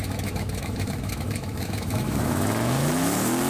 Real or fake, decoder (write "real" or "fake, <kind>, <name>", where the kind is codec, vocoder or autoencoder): fake, autoencoder, DAC-VAE